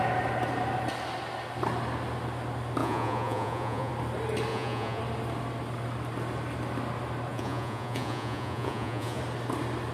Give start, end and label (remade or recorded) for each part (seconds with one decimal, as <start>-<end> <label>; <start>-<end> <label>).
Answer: 0.0-2.8 recorded; 2.8-3.9 remade; 3.9-4.5 recorded; 4.5-5.0 remade; 5.0-7.3 recorded; 7.3-9.2 remade; 9.2-9.9 recorded